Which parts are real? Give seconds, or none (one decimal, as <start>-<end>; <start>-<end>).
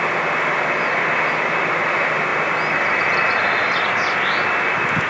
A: 0.0-5.1